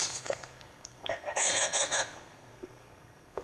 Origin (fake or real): fake